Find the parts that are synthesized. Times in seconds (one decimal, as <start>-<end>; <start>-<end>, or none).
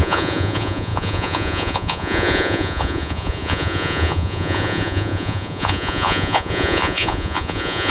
0.0-7.9